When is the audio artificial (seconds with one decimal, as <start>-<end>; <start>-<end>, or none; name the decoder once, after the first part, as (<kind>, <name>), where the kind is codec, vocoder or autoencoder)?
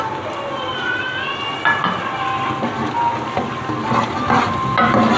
none